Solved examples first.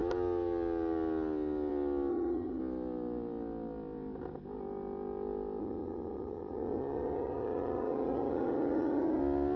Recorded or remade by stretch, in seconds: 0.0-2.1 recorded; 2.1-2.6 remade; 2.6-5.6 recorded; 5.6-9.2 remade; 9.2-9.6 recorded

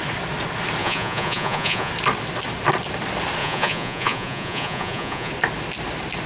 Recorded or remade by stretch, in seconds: 0.0-0.8 recorded; 0.8-1.9 remade; 1.9-3.4 recorded; 3.4-5.3 remade; 5.3-6.3 recorded